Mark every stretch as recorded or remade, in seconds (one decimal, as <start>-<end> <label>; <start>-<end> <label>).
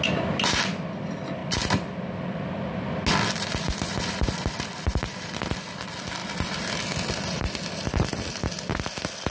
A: 0.0-9.3 recorded